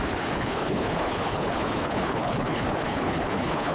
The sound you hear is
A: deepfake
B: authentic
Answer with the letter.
A